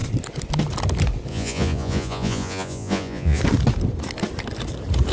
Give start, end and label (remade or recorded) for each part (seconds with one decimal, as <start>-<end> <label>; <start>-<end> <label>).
0.0-1.3 recorded; 1.3-3.4 remade; 3.4-5.1 recorded